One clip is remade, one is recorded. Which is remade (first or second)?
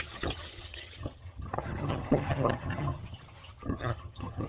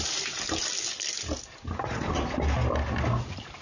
first